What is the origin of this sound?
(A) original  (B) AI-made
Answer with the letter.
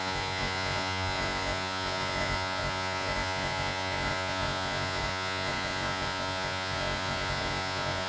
B